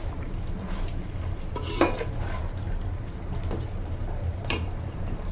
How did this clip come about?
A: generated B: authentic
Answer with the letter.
A